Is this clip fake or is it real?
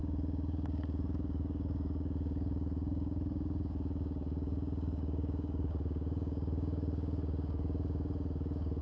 fake